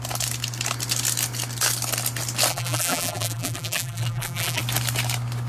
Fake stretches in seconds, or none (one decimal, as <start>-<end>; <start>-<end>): 2.5-4.6